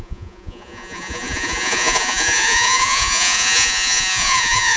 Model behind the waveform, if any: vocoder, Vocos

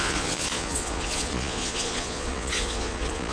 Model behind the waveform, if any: vocoder, Vocos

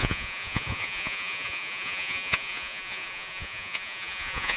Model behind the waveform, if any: vocoder, Vocos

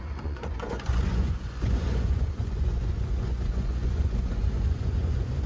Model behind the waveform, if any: vocoder, Vocos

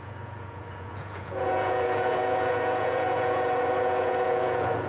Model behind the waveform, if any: vocoder, Vocos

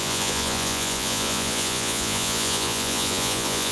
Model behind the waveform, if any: vocoder, Vocos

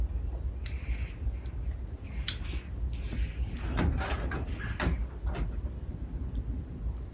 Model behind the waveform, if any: none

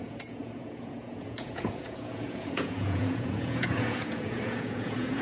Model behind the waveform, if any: vocoder, Vocos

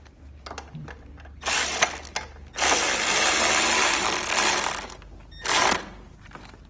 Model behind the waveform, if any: none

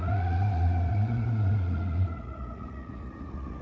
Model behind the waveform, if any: vocoder, Vocos